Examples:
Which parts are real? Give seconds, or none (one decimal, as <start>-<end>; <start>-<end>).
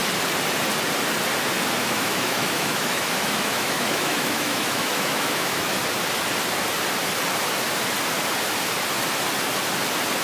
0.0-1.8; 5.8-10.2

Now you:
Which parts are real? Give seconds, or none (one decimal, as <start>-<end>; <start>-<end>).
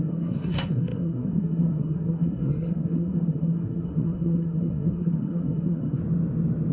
6.0-6.7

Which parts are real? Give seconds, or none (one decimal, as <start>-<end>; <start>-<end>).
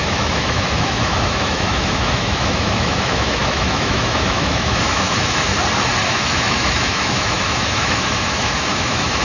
5.5-6.1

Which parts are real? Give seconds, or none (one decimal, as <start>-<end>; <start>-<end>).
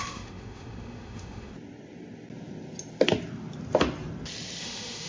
1.5-4.6